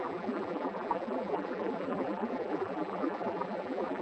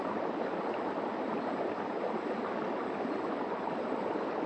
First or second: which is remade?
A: first